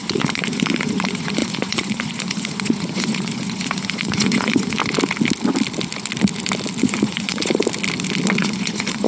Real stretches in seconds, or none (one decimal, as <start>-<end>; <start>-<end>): 4.8-6.8; 7.6-8.4